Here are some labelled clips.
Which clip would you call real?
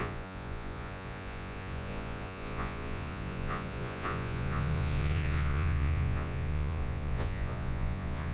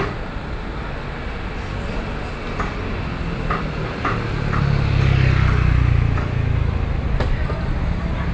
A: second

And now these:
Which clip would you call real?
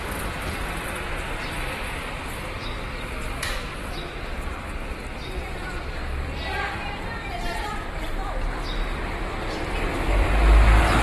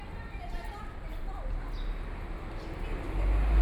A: second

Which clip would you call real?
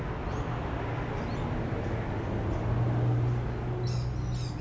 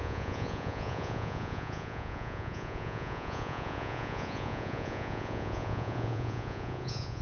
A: first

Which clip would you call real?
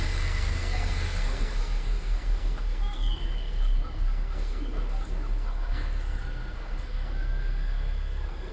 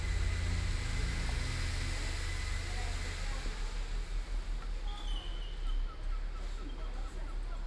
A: second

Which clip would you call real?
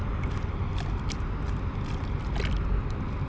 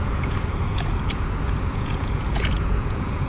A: first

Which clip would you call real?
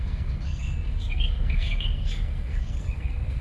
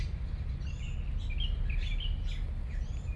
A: second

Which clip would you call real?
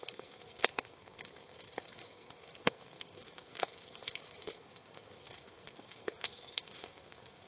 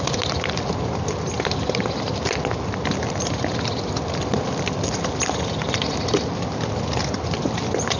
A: second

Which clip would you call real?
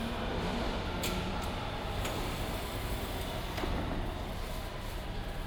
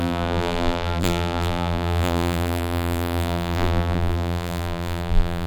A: first